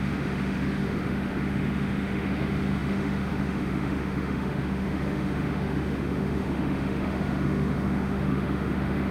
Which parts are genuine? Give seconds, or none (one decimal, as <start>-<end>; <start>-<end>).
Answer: none

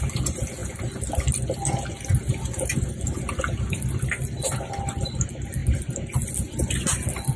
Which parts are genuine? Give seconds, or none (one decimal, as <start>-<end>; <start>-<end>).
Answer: 0.0-7.4

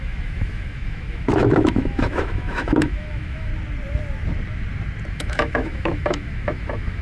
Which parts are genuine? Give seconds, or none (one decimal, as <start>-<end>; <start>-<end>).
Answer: 3.5-5.1

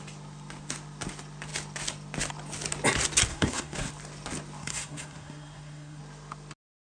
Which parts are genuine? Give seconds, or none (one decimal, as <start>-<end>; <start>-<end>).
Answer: 0.0-3.3; 3.9-4.6; 6.0-7.0

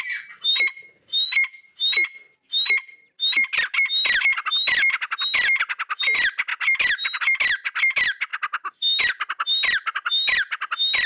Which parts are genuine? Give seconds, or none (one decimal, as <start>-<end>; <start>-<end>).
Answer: 0.0-11.1

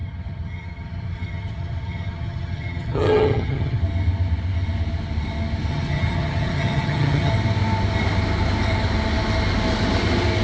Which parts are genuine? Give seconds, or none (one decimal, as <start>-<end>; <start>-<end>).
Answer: 3.8-5.7; 7.3-10.4

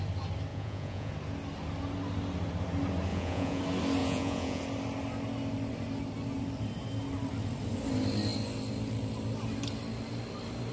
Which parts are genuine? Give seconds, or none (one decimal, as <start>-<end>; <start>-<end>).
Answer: 0.0-0.5; 1.1-3.1; 3.6-4.0; 4.6-10.7